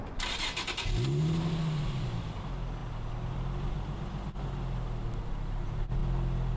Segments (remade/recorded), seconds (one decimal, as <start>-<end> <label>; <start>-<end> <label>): 0.0-6.6 recorded